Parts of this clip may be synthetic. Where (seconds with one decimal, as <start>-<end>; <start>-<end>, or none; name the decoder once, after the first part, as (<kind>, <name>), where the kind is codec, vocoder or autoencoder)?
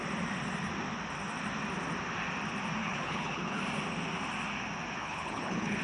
2.8-3.6 (codec, HILCodec); 5.0-5.8